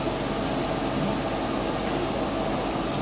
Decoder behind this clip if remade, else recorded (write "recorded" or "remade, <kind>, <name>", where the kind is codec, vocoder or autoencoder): recorded